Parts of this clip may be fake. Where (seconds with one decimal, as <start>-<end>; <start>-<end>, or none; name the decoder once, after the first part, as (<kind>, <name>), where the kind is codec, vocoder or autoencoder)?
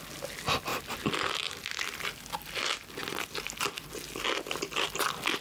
none